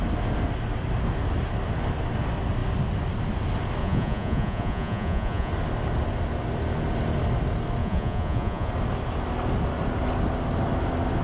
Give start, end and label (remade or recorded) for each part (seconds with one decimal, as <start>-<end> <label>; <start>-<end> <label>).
0.0-3.8 recorded; 3.8-5.5 remade; 5.5-7.8 recorded; 7.8-8.7 remade; 8.7-11.2 recorded